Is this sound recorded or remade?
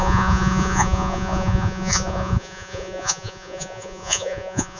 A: remade